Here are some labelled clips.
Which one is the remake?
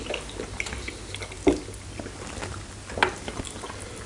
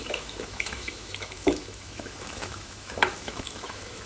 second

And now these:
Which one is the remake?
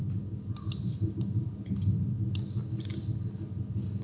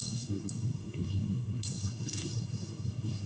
second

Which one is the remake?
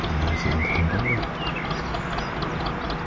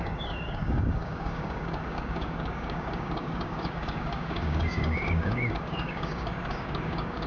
second